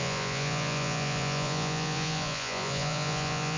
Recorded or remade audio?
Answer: remade